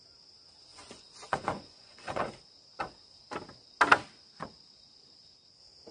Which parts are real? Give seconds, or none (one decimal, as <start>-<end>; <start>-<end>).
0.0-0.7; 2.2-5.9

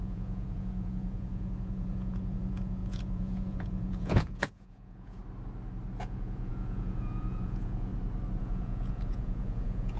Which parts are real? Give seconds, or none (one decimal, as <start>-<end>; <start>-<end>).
5.2-6.0; 7.9-8.4

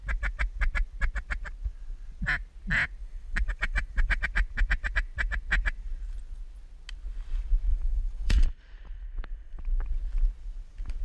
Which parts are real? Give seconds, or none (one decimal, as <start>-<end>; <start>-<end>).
0.0-3.0; 4.2-7.7; 9.6-11.0

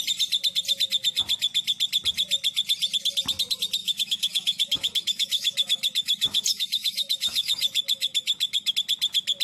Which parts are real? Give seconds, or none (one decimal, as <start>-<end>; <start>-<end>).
0.0-3.8; 8.7-9.4